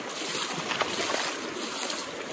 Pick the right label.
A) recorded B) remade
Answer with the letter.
A